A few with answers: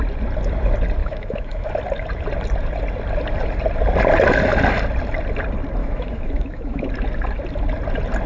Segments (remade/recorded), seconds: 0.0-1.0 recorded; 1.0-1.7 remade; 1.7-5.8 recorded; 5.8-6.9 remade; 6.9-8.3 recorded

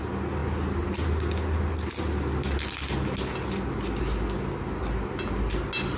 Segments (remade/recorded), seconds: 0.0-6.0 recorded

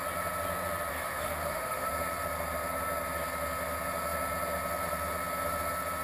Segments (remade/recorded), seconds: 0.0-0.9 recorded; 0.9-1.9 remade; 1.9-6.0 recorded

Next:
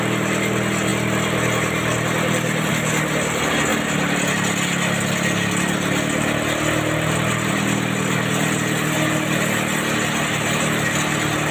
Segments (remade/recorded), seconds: 0.0-11.5 recorded

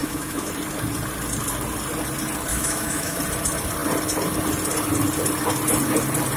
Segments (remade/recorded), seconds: 0.0-0.5 remade; 0.5-2.5 recorded; 2.5-3.2 remade; 3.2-6.4 recorded

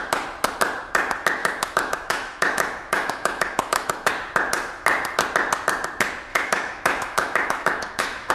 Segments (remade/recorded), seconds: 0.0-1.4 recorded; 1.4-4.1 remade; 4.1-6.3 recorded; 6.3-8.3 remade

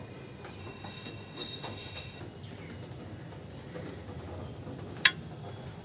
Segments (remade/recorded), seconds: 0.0-0.6 recorded; 0.6-2.2 remade; 2.2-5.8 recorded

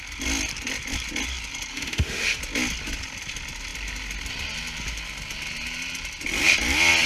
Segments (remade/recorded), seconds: 0.0-1.7 recorded; 1.7-2.4 remade; 2.4-7.1 recorded